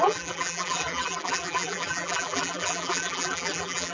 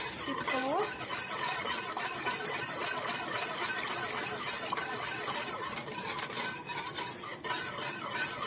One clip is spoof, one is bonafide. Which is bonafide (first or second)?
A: second